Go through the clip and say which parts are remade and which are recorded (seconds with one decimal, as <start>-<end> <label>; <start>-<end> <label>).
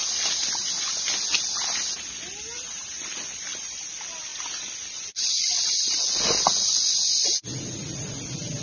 0.0-8.6 recorded